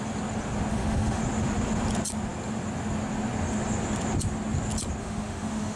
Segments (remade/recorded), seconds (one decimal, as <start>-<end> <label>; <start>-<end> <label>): 0.0-0.7 recorded; 0.7-1.2 remade; 1.2-5.0 recorded; 5.0-5.8 remade